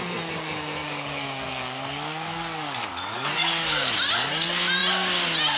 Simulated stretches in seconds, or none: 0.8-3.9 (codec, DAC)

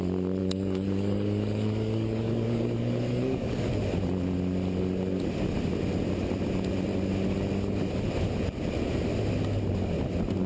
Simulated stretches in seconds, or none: 0.4-3.7 (codec, DAC)